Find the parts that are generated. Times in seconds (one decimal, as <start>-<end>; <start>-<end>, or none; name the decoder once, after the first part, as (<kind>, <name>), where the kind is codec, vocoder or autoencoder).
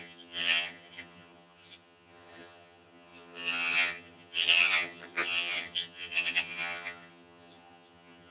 0.0-8.3 (vocoder, HiFi-GAN)